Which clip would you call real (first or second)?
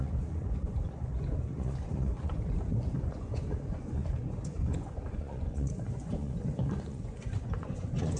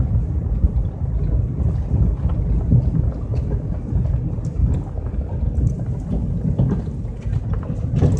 second